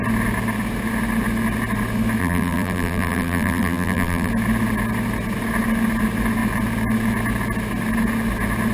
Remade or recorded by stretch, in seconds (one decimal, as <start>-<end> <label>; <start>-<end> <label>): 0.0-2.2 recorded; 2.2-4.3 remade; 4.3-8.7 recorded